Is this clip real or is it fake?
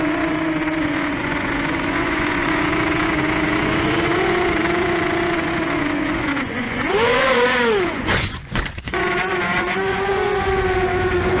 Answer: fake